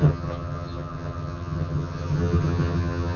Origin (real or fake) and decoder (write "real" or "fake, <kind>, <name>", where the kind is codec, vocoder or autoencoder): fake, vocoder, HiFi-GAN